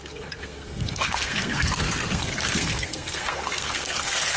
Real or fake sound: fake